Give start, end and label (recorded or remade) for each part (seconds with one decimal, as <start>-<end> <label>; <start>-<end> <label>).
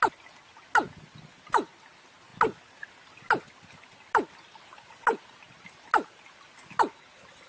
0.0-7.5 recorded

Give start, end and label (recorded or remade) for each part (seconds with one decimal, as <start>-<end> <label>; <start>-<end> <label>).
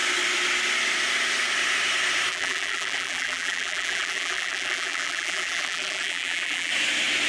0.0-2.3 recorded; 2.3-6.7 remade; 6.7-7.3 recorded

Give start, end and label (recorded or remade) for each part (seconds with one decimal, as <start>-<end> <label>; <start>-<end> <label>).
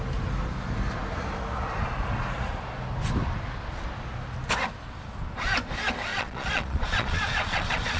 0.0-6.1 recorded; 6.1-8.0 remade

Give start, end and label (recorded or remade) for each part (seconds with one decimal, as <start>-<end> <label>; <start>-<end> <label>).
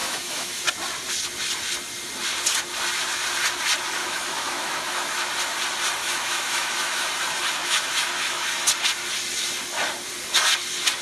0.0-0.6 remade; 0.6-4.0 recorded; 4.0-5.3 remade; 5.3-6.0 recorded; 6.0-7.1 remade; 7.1-7.6 recorded; 7.6-8.5 remade; 8.5-11.0 recorded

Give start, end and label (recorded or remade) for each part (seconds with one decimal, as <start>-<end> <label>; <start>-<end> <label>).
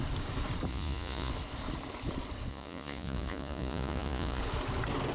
0.0-0.7 recorded; 0.7-1.3 remade; 1.3-2.5 recorded; 2.5-4.4 remade; 4.4-5.1 recorded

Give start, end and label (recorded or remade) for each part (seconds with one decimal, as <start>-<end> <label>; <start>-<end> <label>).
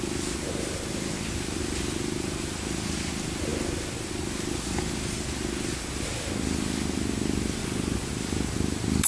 0.0-7.6 recorded; 7.6-8.1 remade; 8.1-9.1 recorded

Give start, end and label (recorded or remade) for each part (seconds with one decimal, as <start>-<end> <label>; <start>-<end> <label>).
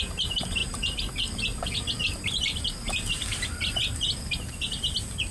0.0-0.6 recorded; 0.6-1.1 remade; 1.1-5.3 recorded